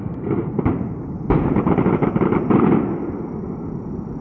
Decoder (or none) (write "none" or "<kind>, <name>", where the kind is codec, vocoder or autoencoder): none